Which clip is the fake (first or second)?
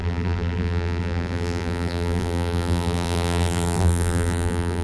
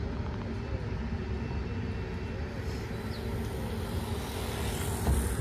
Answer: first